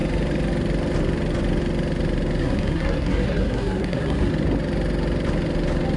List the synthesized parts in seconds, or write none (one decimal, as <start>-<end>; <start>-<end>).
2.4-4.3

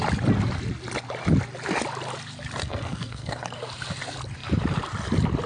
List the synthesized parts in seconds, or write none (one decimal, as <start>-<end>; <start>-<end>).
2.6-3.6

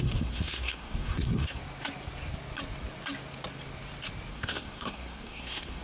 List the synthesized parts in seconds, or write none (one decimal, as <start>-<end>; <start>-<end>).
0.0-1.6; 4.3-5.8

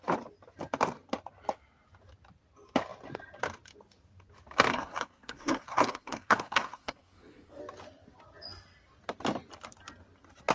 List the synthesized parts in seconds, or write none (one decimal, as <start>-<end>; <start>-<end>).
4.7-7.6

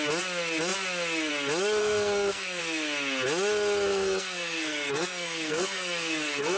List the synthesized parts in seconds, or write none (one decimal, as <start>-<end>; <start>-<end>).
1.8-2.6; 3.9-6.6